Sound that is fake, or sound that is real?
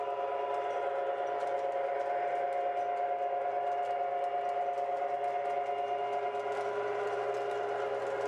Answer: real